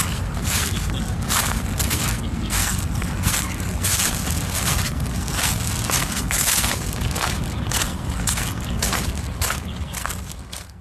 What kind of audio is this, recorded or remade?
remade